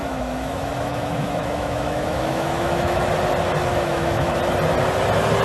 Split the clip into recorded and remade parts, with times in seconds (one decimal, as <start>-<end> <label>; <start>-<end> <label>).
0.0-3.0 remade; 3.0-3.7 recorded; 3.7-4.4 remade; 4.4-5.4 recorded